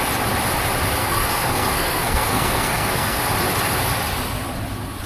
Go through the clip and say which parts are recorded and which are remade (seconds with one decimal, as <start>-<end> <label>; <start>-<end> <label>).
0.0-1.0 recorded; 1.0-3.2 remade; 3.2-5.1 recorded